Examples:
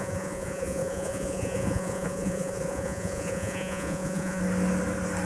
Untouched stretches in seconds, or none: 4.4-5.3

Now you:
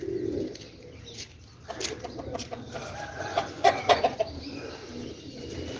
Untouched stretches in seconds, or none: 0.0-3.3; 4.2-5.8

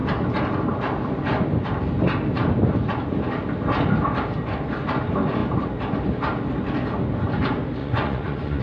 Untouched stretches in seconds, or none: 0.0-7.8

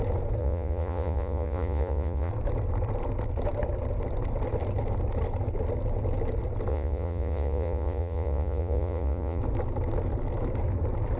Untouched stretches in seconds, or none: 0.0-0.4; 2.3-6.7; 9.4-11.2

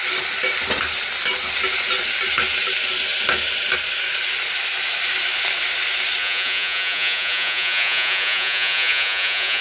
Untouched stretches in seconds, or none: 0.0-6.2

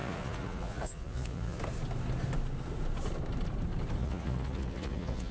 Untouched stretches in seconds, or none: 1.6-4.0